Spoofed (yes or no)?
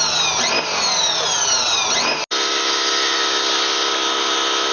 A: no